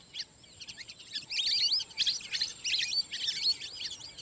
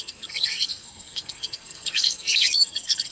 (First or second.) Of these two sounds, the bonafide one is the first